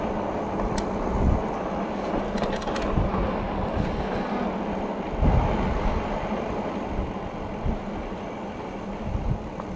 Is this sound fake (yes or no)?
no